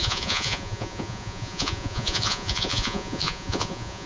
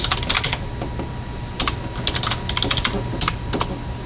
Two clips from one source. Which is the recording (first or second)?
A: second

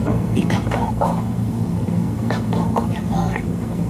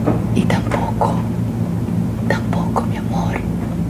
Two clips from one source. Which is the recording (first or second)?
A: second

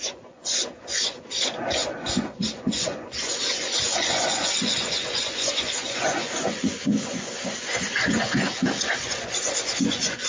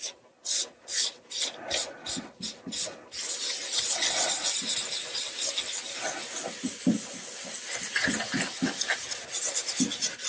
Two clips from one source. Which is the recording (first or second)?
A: second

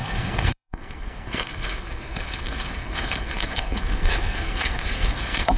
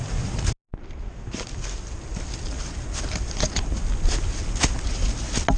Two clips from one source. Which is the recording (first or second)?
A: second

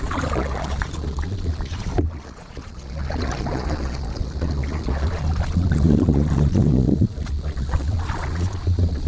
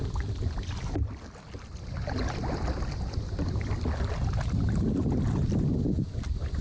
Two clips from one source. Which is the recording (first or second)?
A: second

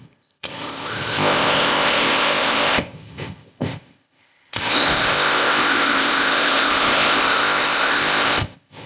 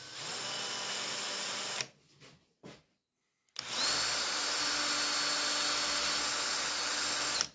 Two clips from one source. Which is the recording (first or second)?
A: second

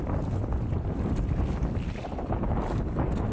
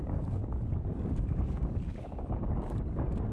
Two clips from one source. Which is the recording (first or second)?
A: first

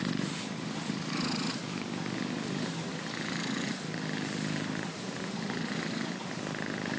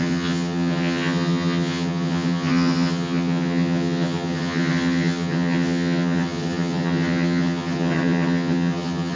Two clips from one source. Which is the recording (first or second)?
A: first